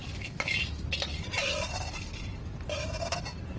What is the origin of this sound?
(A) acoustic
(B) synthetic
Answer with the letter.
A